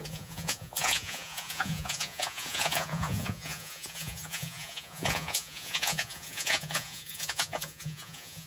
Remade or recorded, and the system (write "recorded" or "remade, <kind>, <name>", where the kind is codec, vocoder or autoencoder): remade, vocoder, Vocos